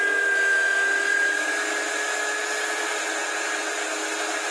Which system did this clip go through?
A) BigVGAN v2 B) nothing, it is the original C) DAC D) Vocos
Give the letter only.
B